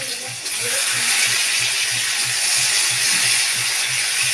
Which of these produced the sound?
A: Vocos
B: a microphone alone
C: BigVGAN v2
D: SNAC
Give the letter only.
A